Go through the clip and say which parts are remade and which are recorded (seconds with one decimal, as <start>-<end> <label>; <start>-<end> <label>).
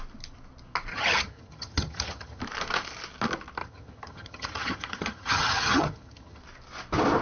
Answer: 0.0-0.9 recorded; 0.9-2.4 remade; 2.4-3.6 recorded; 3.6-6.4 remade; 6.4-7.2 recorded